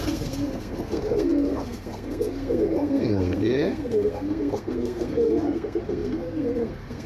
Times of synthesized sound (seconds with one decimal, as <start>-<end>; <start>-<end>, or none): 0.0-7.1